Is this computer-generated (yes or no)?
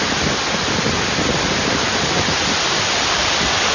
no